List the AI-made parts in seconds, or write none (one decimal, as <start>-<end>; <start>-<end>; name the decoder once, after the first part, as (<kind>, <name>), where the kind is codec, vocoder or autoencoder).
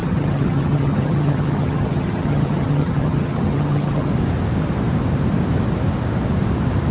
0.0-4.1 (vocoder, HiFi-GAN)